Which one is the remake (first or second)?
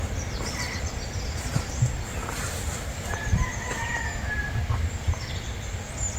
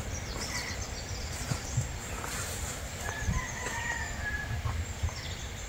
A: second